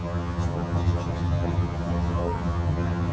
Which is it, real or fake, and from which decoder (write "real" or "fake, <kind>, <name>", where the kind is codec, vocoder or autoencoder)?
fake, vocoder, HiFi-GAN